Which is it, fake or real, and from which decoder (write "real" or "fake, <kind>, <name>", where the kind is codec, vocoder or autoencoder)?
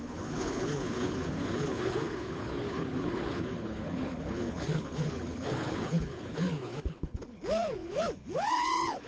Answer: fake, codec, HILCodec